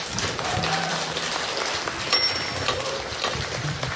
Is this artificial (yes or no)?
yes